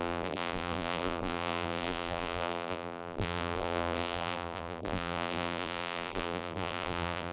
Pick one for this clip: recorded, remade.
remade